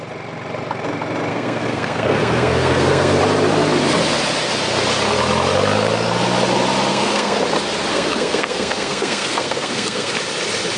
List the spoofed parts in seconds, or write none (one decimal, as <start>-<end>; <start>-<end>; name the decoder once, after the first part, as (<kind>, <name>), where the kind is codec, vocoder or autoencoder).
1.3-3.2 (codec, SNAC); 6.9-7.4; 7.9-10.1